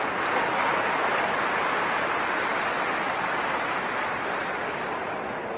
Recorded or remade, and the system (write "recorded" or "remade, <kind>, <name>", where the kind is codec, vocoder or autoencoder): recorded